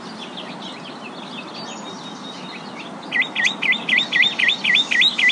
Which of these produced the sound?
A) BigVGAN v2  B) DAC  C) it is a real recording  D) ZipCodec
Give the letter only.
C